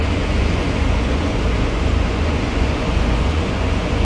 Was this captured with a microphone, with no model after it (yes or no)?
no